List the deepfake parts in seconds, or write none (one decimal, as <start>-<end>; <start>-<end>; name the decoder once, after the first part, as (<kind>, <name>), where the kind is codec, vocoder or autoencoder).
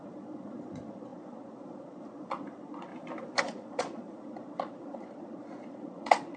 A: 0.0-2.9 (vocoder, Vocos); 3.4-6.4